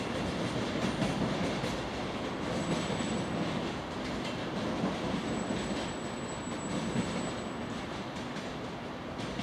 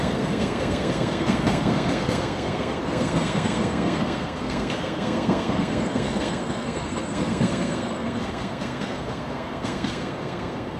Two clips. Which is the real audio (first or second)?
first